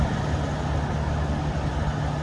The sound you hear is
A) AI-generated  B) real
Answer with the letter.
B